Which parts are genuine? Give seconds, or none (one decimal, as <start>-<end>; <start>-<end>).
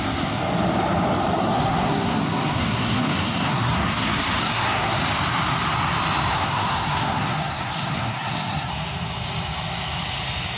0.4-1.4; 5.0-6.3; 8.7-10.6